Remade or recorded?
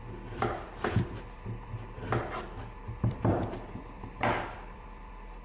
remade